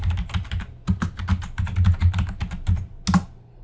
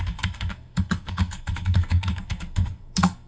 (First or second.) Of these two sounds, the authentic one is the first